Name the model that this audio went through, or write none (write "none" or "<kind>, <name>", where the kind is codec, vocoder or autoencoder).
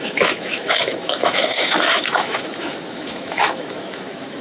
autoencoder, DAC-VAE